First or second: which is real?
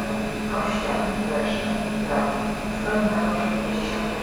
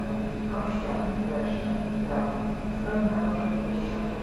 first